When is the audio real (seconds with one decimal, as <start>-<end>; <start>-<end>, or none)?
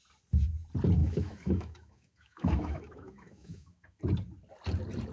0.0-1.0; 4.0-5.1